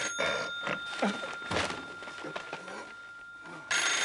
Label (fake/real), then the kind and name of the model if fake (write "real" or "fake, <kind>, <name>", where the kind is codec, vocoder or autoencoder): real